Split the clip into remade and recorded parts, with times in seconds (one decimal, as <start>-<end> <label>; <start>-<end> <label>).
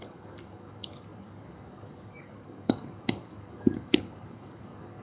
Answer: 0.0-5.0 remade